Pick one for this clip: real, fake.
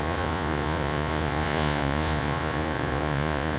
fake